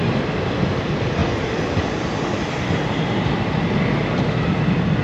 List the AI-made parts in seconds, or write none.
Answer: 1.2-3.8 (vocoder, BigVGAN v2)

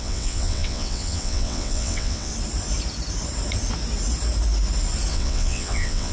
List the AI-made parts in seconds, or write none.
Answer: 0.0-2.3 (vocoder, WaveNeXt); 5.1-6.1

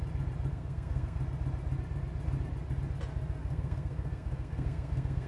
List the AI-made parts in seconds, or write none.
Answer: 0.5-1.2 (codec, SNAC); 3.4-5.3